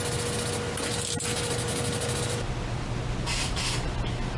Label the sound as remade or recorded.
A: recorded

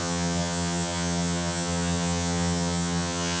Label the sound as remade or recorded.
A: remade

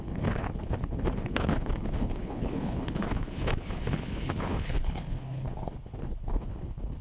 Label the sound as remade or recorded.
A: remade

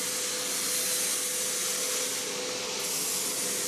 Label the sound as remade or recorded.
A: recorded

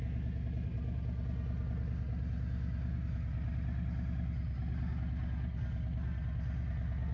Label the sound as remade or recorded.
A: recorded